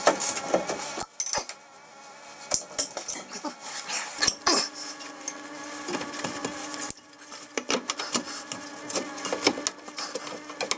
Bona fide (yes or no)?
yes